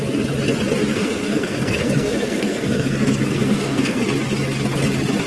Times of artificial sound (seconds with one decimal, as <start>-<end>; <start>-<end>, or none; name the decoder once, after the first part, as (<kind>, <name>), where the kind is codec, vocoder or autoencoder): 0.9-4.0 (codec, SNAC)